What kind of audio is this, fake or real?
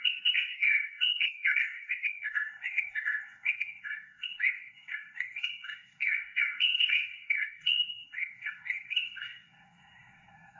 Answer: fake